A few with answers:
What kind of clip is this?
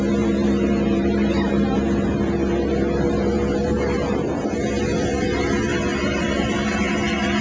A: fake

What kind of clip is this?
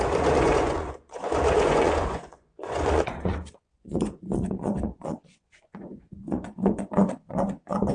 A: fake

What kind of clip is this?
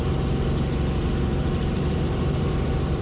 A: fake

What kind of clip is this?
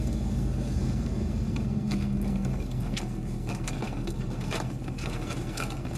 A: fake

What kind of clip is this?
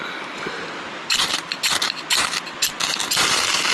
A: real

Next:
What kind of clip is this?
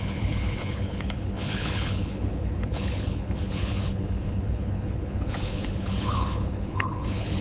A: fake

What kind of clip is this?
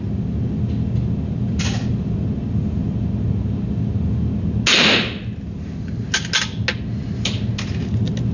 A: real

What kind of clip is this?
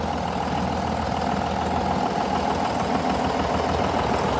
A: real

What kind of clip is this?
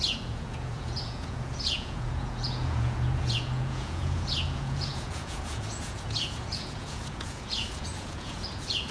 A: fake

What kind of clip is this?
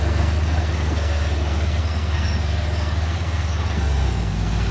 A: fake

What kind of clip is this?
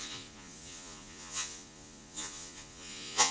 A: fake